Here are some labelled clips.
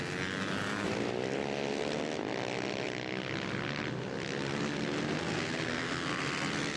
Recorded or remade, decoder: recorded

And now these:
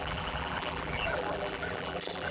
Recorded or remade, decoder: remade, vocoder, BigVGAN v2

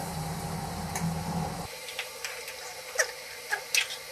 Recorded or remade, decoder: recorded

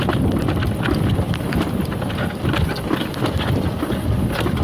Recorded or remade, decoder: recorded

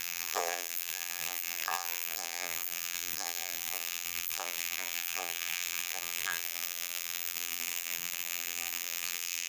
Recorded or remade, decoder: remade, vocoder, BigVGAN v2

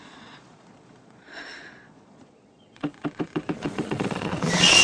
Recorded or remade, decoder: remade, vocoder, Vocos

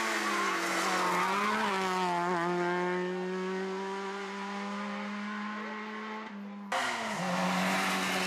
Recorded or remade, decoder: recorded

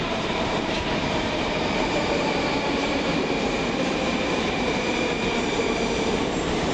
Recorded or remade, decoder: remade, vocoder, BigVGAN v2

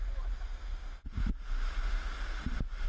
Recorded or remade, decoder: recorded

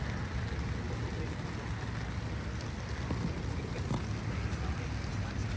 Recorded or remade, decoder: recorded